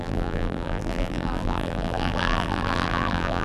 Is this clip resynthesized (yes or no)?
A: yes